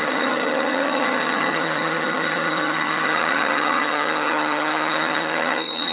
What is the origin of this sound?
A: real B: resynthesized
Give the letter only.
B